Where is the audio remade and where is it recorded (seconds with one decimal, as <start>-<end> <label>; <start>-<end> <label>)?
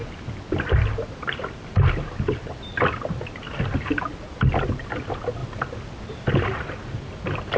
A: 0.0-7.6 recorded